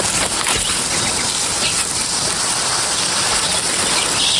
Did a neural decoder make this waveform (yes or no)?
no